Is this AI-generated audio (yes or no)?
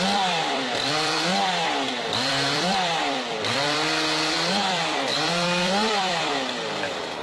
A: yes